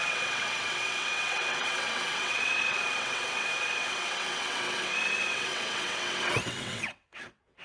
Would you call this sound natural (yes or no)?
no